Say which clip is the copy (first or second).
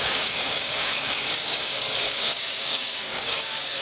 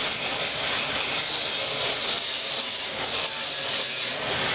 first